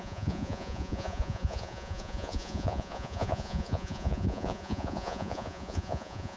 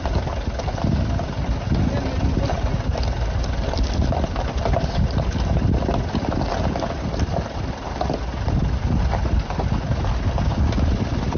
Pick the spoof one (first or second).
first